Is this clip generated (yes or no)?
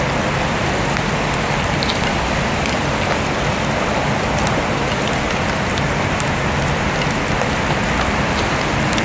no